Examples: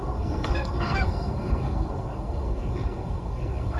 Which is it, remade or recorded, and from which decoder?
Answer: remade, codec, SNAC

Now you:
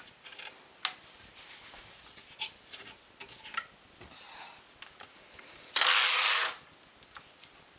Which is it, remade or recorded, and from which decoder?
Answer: recorded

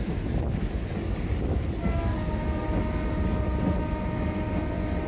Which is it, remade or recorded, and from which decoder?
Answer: recorded